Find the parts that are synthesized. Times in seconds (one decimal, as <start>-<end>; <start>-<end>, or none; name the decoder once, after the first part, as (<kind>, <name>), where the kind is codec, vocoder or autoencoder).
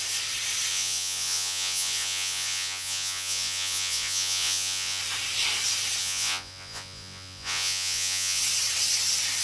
0.7-5.0 (vocoder, Vocos); 6.0-8.4